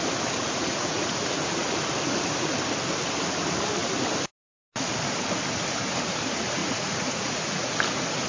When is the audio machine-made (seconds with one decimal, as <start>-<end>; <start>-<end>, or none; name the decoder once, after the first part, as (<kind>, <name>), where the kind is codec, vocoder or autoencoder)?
0.4-1.2 (vocoder, Vocos); 6.6-7.7